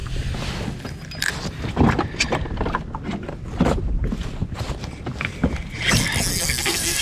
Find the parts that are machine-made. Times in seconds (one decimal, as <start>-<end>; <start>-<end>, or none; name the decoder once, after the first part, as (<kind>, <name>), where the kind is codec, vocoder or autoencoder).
6.3-7.0 (codec, SNAC)